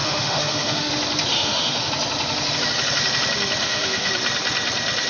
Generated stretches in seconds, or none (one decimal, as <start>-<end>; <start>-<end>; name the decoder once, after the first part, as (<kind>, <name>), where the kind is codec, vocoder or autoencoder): 0.0-0.9 (autoencoder, DAC-VAE); 1.3-1.9; 3.6-4.1